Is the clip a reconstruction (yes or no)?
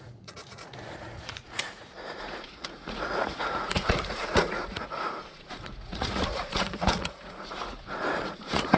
yes